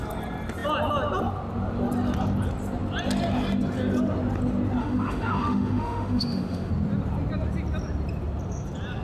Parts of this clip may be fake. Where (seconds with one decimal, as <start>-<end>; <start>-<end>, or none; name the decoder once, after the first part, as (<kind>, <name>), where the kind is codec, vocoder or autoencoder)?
4.8-6.7 (autoencoder, DAC-VAE)